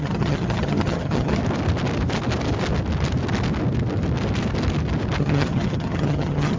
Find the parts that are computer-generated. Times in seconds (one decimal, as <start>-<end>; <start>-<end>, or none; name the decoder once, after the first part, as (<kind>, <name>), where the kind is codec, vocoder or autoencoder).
0.0-1.4 (vocoder, HiFi-GAN); 5.2-6.6